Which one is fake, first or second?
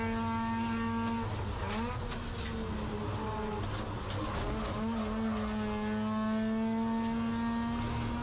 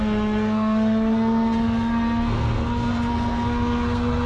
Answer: second